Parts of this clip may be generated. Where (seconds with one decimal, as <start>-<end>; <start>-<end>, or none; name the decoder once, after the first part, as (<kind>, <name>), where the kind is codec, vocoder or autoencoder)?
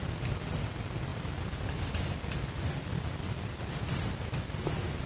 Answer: none